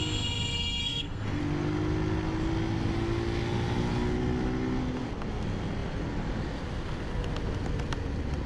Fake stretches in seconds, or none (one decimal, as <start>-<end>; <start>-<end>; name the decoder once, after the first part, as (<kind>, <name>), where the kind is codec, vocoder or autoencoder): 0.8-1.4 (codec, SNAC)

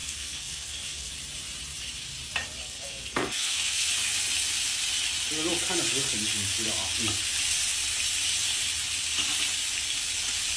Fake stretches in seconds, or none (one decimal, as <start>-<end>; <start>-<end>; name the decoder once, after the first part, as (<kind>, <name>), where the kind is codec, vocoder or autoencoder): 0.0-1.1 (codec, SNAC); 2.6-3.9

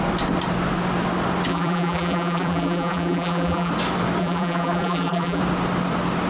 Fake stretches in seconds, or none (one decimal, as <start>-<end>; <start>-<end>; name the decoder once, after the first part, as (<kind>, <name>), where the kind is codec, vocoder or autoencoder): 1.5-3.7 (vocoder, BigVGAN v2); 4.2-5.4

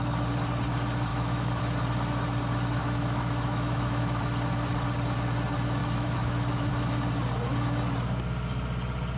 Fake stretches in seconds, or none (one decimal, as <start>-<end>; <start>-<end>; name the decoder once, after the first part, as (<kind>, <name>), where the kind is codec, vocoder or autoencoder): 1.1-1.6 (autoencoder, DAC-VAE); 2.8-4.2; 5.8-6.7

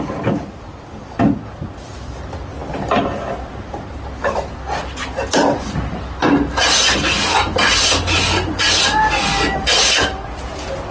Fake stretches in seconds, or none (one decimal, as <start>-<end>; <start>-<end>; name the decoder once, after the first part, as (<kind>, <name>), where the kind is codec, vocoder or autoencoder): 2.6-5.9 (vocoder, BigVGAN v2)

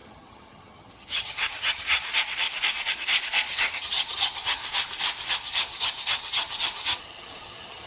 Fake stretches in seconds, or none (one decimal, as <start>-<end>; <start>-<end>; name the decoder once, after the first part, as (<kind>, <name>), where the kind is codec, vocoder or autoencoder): 0.0-2.0 (vocoder, HiFi-GAN); 3.5-4.6; 5.3-7.9